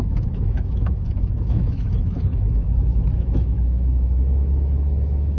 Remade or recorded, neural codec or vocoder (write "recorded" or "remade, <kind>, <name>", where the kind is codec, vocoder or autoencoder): remade, autoencoder, DAC-VAE